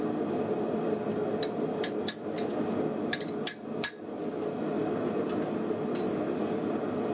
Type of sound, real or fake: real